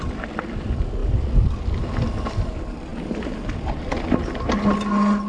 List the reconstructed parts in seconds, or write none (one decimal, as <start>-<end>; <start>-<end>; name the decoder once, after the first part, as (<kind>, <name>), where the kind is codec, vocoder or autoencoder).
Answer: none